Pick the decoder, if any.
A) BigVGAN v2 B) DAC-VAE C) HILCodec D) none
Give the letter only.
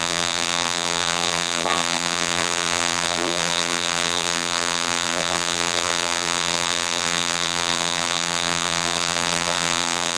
A